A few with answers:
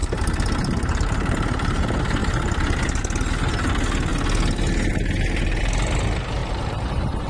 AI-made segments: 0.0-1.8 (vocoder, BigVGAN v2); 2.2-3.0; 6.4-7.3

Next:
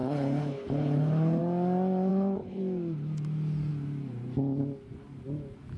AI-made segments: 0.0-1.4 (codec, HILCodec); 2.1-2.6